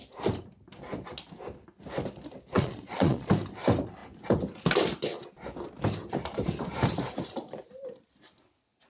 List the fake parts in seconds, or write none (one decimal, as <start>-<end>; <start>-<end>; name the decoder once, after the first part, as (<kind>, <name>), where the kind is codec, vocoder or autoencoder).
2.5-3.3 (vocoder, Vocos)